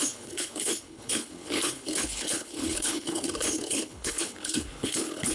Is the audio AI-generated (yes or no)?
yes